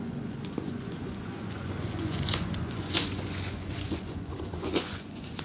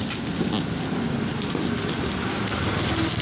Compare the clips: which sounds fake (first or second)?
first